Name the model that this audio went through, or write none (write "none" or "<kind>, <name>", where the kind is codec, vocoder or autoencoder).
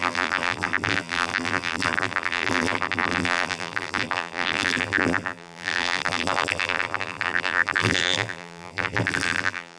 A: vocoder, BigVGAN v2